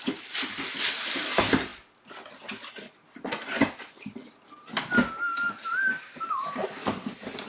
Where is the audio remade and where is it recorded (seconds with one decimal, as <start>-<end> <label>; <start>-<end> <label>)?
0.0-7.5 recorded